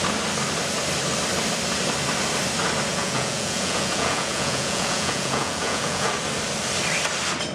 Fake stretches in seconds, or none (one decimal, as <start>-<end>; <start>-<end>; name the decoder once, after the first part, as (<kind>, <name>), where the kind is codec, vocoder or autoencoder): 2.9-6.1 (vocoder, Vocos)